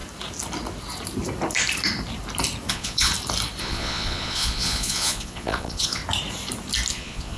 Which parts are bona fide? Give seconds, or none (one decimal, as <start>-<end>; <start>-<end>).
0.0-2.7; 3.1-3.6; 6.0-6.9